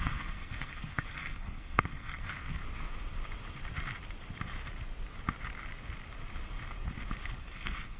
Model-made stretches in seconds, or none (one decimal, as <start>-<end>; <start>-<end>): 0.0-2.6; 7.4-8.0